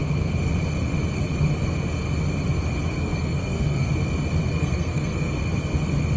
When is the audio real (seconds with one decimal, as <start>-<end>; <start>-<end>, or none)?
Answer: 0.0-2.9; 3.9-4.5; 5.3-6.2